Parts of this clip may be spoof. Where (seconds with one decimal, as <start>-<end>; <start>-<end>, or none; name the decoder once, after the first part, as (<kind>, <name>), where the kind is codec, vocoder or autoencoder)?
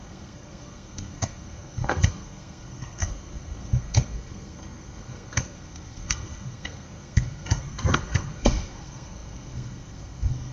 0.0-10.5 (codec, SNAC)